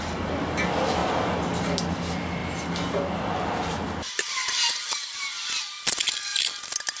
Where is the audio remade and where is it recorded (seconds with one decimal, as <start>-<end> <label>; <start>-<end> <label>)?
0.0-7.0 recorded